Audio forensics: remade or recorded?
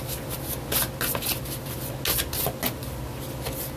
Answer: recorded